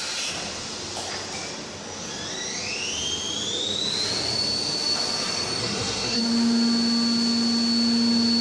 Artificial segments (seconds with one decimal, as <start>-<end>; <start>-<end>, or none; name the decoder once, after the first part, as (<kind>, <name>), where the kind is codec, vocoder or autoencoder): 5.6-6.2 (codec, SNAC)